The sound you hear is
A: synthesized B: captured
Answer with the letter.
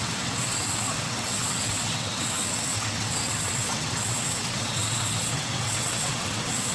A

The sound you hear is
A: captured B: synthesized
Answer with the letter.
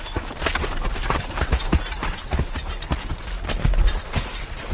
A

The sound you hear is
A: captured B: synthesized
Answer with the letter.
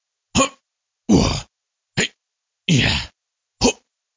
A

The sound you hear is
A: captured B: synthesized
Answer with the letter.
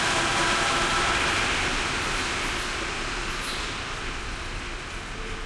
A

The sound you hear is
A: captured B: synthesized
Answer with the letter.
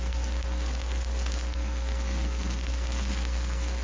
B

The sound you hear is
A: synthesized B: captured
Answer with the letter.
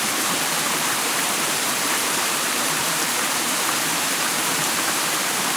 A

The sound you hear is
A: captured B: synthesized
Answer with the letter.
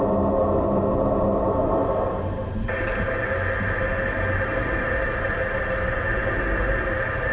A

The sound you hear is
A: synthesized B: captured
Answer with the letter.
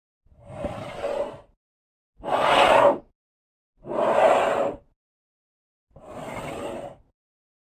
B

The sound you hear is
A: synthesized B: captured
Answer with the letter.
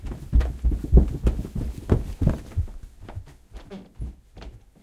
B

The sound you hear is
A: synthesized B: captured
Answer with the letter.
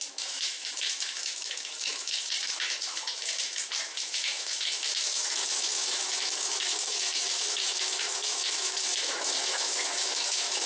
A